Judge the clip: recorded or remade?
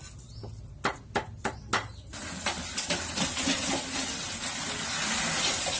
recorded